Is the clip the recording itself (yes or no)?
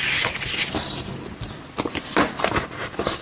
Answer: yes